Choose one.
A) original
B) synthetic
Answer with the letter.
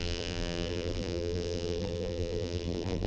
B